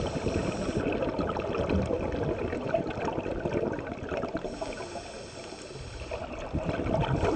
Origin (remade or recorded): recorded